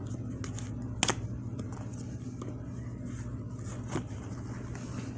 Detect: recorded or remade recorded